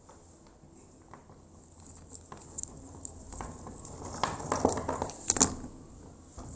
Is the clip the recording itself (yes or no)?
yes